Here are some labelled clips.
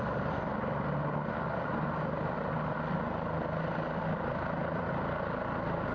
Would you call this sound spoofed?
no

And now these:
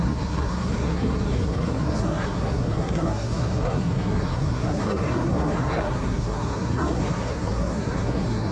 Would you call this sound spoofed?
yes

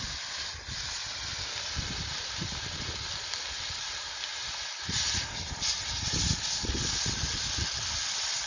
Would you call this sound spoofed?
no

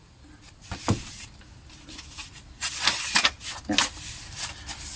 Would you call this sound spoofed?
no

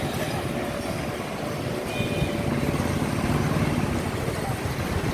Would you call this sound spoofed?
no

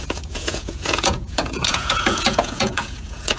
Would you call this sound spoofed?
yes